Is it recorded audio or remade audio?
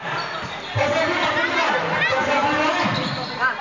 recorded